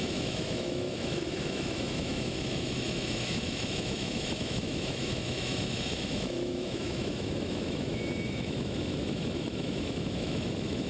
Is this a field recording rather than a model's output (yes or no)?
no